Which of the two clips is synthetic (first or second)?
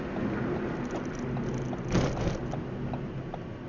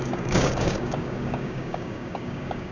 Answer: second